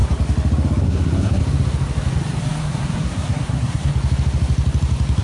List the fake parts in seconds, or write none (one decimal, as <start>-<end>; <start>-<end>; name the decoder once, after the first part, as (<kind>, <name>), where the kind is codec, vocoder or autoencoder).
0.8-1.4 (codec, SNAC); 2.4-3.9